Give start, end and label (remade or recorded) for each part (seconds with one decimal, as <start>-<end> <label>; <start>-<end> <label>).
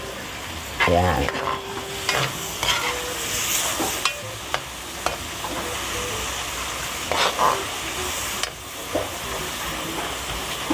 0.0-8.8 recorded; 8.8-9.4 remade; 9.4-10.7 recorded